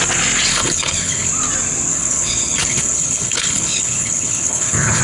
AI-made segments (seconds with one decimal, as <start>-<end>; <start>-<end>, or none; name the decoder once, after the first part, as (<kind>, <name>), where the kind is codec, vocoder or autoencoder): 0.5-1.3 (codec, HILCodec); 1.9-5.0